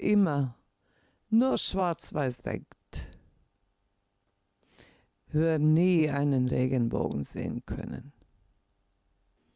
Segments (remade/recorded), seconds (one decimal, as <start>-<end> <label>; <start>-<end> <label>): 0.0-9.6 recorded